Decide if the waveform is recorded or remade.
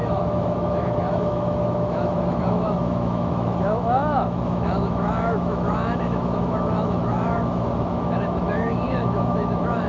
remade